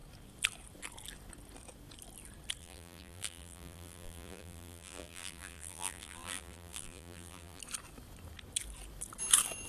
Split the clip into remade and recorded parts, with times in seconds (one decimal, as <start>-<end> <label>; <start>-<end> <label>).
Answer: 0.0-2.6 recorded; 2.6-7.6 remade; 7.6-9.7 recorded